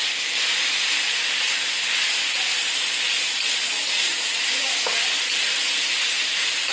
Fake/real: real